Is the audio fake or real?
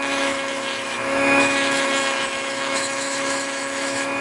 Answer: fake